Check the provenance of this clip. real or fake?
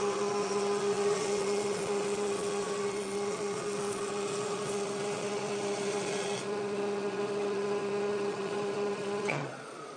fake